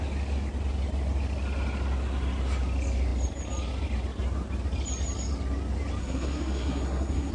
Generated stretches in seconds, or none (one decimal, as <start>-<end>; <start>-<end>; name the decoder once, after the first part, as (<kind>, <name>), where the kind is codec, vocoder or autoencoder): 6.0-7.3 (codec, SNAC)